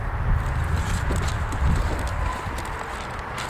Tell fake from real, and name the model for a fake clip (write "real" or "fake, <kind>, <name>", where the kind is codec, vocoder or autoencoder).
real